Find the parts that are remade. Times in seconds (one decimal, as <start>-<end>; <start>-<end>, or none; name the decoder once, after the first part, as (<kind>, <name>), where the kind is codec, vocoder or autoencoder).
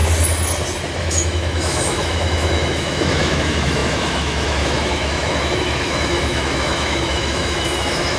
1.0-8.2 (autoencoder, DAC-VAE)